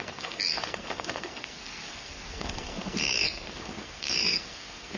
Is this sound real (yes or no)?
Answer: no